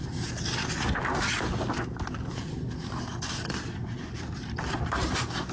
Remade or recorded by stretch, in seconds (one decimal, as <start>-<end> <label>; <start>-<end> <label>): 0.0-5.5 recorded